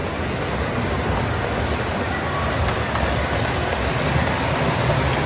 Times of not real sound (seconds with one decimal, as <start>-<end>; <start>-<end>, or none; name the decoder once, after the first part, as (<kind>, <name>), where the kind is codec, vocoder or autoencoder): none